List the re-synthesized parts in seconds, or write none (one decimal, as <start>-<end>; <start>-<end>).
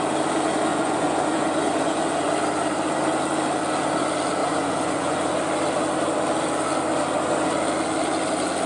0.7-2.3; 4.4-5.3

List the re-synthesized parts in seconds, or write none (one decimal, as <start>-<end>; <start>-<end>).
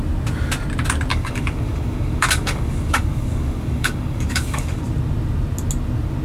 1.1-4.8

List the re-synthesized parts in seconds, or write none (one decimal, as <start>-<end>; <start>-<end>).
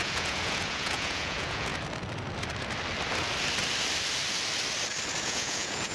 0.0-1.7; 5.2-5.9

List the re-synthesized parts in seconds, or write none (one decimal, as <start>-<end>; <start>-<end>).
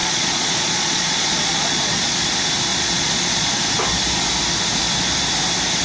0.0-2.2; 2.7-3.5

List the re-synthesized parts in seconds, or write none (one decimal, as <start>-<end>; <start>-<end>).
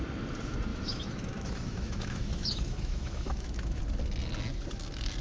0.7-3.8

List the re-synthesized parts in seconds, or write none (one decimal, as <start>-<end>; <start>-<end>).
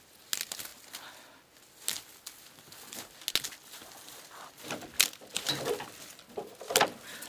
none